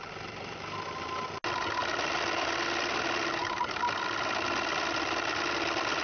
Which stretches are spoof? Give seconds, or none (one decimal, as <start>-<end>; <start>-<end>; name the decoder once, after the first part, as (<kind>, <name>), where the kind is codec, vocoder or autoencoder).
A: none